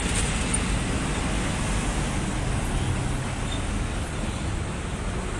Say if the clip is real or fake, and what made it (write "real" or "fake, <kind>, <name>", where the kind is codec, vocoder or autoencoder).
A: real